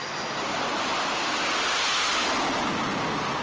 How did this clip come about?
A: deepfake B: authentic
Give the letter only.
B